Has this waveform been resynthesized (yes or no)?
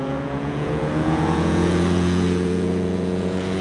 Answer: yes